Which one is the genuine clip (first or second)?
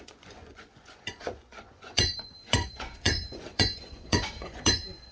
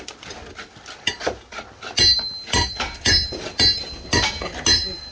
second